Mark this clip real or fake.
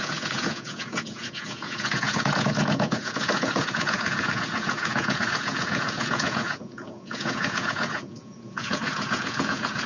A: fake